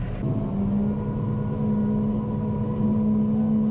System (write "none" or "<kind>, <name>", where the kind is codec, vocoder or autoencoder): none